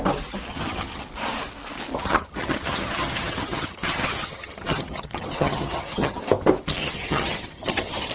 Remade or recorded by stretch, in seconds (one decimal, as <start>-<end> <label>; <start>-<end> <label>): 0.0-0.5 recorded; 0.5-1.1 remade; 1.1-1.9 recorded; 1.9-6.2 remade; 6.2-6.8 recorded; 6.8-8.1 remade